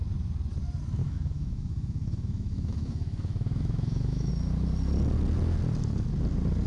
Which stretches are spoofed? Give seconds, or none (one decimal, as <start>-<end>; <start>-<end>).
1.0-4.3